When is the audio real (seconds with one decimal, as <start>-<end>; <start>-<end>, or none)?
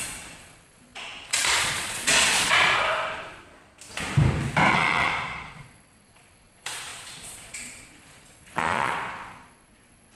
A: 3.4-4.7